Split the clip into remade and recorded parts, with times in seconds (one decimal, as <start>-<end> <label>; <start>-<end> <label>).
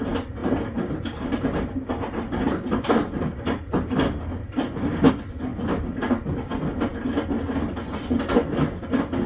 0.0-0.4 recorded; 0.4-5.1 remade; 5.1-5.5 recorded; 5.5-6.1 remade; 6.1-9.3 recorded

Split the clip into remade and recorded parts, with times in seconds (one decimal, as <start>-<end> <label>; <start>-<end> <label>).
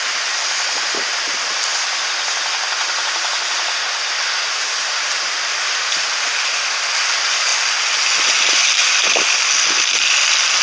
0.0-10.6 recorded